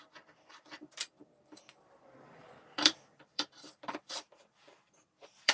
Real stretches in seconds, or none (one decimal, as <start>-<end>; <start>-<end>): 1.1-1.8